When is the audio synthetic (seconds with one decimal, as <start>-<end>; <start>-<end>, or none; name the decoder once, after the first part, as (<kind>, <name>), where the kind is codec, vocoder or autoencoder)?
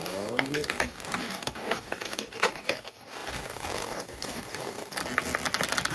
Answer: 0.0-5.0 (codec, DAC)